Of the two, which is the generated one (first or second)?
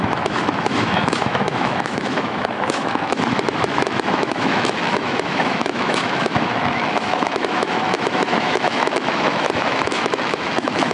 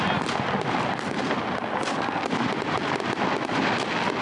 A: first